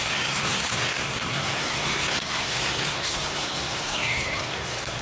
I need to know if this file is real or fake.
fake